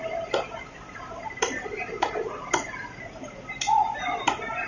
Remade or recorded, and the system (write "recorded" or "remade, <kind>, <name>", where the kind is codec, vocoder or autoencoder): recorded